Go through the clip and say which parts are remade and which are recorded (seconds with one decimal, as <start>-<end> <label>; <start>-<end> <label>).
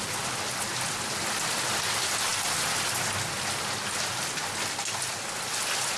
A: 0.0-6.0 recorded